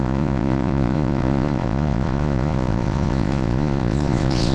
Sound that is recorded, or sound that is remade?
remade